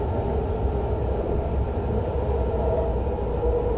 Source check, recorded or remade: recorded